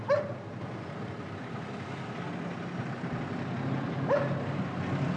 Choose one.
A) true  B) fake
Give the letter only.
A